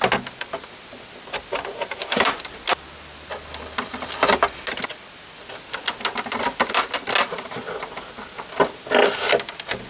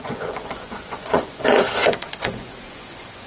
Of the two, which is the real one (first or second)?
first